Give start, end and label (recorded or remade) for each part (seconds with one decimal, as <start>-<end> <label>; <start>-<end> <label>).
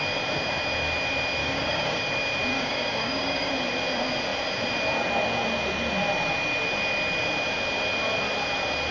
0.0-1.4 recorded; 1.4-2.0 remade; 2.0-2.5 recorded; 2.5-3.5 remade; 3.5-8.9 recorded